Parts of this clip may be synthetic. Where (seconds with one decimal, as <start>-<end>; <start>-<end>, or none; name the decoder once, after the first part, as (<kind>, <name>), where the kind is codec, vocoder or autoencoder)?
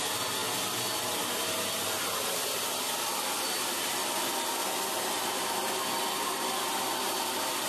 0.0-0.4 (vocoder, BigVGAN v2); 3.2-4.6; 7.0-7.7